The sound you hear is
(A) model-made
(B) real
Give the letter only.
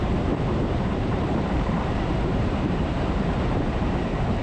A